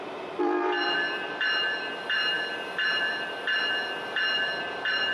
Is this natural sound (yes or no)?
no